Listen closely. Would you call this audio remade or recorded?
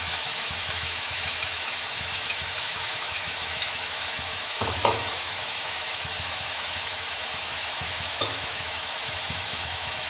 remade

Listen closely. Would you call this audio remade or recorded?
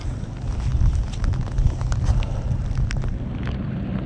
recorded